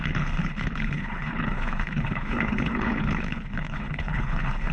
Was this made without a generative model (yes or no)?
no